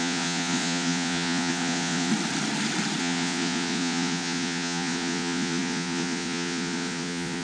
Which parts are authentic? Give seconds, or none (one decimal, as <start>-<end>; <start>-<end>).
2.1-3.0